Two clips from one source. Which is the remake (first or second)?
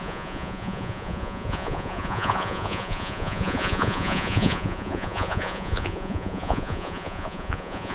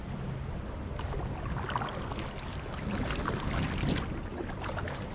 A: first